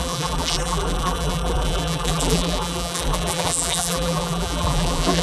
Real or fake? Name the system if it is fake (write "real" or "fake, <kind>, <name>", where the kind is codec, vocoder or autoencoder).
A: fake, vocoder, BigVGAN v2